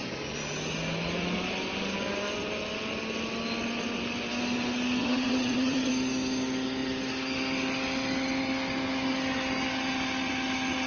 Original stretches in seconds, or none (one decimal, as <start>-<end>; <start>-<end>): 0.0-5.0; 5.9-10.9